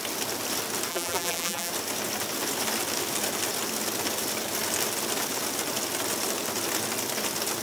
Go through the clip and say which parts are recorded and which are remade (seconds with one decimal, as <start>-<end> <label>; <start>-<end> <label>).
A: 0.0-0.9 recorded; 0.9-1.7 remade; 1.7-7.6 recorded